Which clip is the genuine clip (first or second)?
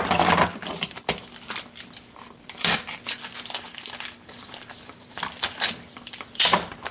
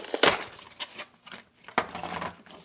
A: second